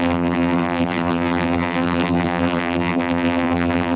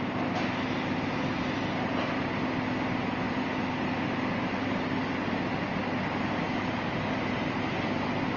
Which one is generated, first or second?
first